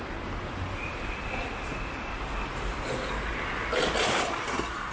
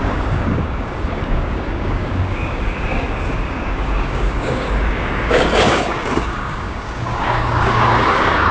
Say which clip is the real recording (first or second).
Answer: first